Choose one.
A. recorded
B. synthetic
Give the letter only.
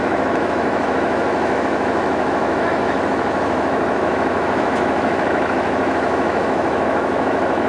B